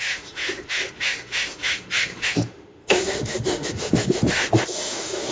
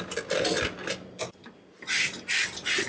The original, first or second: second